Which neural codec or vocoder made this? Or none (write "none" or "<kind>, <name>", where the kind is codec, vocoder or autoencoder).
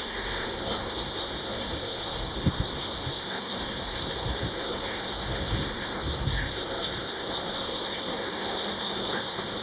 codec, SNAC